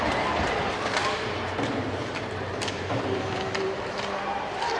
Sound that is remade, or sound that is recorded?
remade